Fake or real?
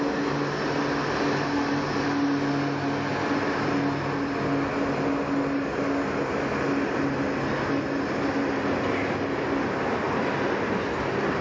real